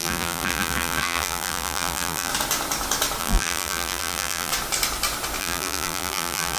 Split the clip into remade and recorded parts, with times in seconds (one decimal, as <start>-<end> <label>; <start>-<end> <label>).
0.0-2.3 remade; 2.3-3.2 recorded; 3.2-4.5 remade; 4.5-5.4 recorded; 5.4-6.6 remade